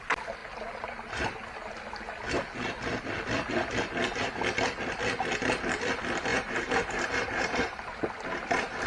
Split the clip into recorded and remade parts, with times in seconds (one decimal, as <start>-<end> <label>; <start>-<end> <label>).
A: 0.0-6.3 recorded; 6.3-8.0 remade; 8.0-8.9 recorded

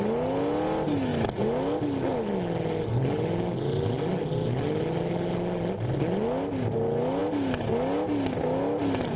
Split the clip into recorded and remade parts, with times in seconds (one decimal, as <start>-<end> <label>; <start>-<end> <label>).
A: 0.0-9.2 recorded

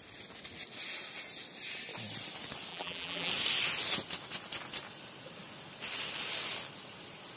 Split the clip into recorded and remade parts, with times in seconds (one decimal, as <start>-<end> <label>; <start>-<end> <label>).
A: 0.0-2.7 recorded; 2.7-3.3 remade; 3.3-7.4 recorded